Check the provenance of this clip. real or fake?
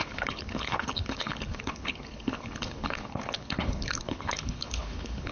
fake